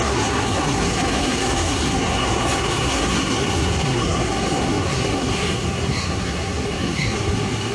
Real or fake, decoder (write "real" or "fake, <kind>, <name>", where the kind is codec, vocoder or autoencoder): fake, codec, SNAC